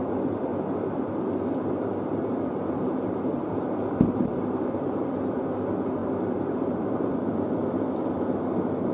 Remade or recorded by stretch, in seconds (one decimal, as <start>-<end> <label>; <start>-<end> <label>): 0.0-0.5 recorded; 0.5-5.1 remade; 5.1-6.0 recorded; 6.0-7.1 remade; 7.1-8.9 recorded